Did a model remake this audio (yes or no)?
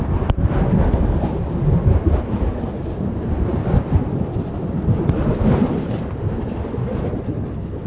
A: no